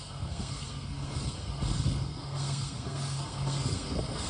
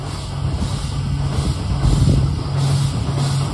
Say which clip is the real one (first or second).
second